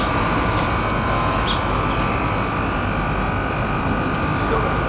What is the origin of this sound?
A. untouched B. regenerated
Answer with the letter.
A